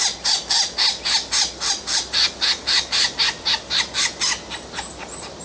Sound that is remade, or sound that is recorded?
recorded